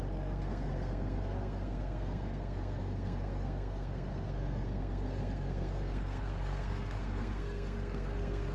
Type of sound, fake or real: fake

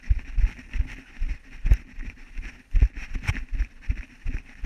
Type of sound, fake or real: real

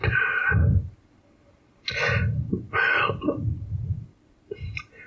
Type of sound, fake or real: real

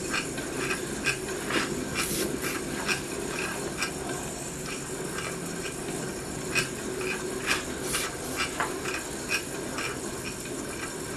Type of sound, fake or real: real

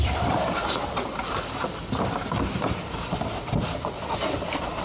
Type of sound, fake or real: real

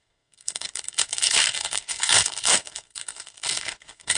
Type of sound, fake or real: fake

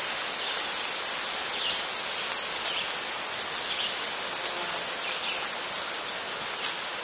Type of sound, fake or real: real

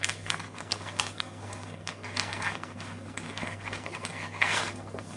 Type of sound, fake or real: fake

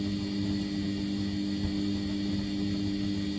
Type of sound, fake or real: real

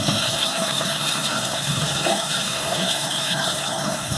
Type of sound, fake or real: fake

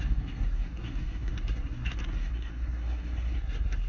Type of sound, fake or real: fake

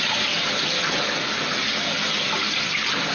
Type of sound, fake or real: real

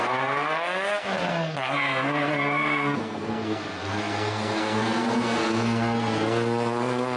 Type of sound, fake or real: fake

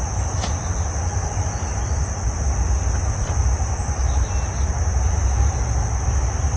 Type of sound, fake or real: real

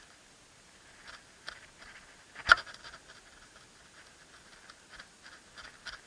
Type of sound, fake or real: real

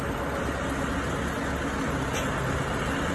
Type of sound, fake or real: real